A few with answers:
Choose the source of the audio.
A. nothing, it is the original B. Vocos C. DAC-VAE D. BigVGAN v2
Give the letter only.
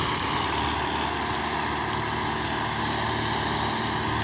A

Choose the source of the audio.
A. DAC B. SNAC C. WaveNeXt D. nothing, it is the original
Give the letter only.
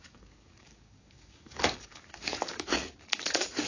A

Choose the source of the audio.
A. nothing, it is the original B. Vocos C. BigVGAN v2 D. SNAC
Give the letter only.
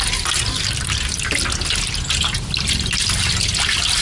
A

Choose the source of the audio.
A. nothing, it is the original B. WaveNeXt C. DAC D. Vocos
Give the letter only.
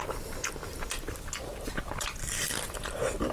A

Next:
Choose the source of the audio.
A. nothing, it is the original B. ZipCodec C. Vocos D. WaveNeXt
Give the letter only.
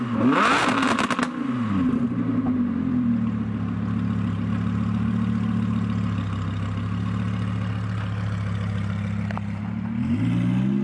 A